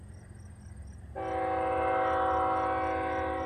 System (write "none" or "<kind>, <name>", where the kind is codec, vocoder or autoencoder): none